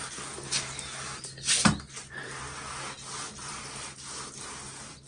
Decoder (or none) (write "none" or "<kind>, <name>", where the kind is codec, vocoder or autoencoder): none